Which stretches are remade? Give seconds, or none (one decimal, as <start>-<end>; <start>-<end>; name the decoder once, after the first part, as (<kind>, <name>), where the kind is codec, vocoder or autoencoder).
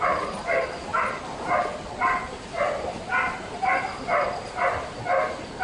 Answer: none